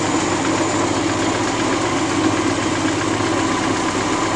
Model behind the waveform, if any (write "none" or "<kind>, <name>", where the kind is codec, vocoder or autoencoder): none